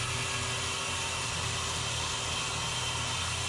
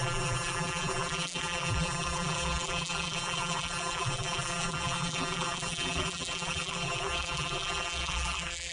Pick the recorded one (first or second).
first